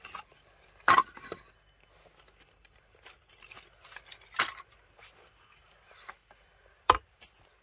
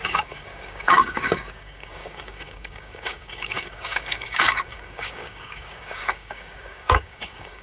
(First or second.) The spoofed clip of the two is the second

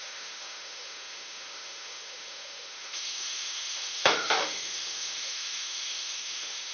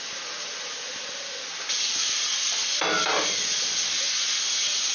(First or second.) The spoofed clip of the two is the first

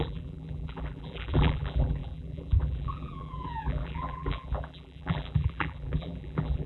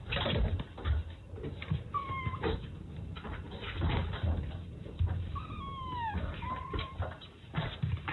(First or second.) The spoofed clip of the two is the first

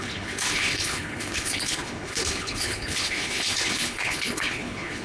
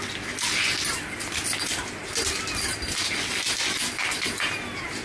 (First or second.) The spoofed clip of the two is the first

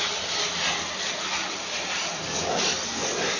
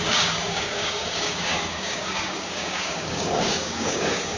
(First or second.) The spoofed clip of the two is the second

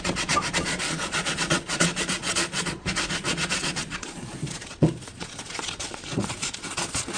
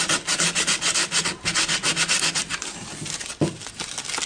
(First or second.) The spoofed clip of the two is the first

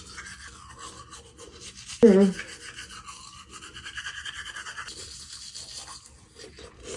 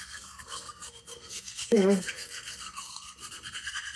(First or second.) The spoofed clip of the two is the second